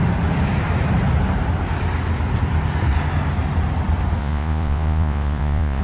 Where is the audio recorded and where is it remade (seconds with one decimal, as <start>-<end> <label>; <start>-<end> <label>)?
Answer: 0.0-4.2 recorded; 4.2-5.8 remade